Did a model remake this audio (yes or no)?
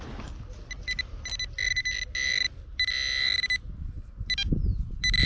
no